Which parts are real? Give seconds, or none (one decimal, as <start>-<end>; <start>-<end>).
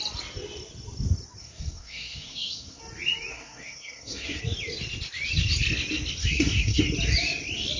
0.0-1.4; 2.8-3.3; 4.4-6.2; 6.8-7.8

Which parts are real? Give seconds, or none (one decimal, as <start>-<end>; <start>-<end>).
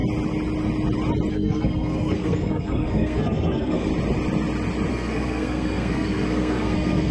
0.0-1.3; 3.9-4.9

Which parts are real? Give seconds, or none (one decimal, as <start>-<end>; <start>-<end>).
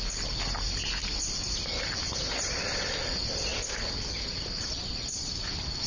0.0-5.9